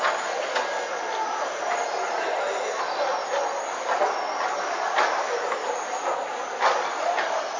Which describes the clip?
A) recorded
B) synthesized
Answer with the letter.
A